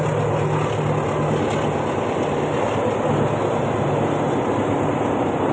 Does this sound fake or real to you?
real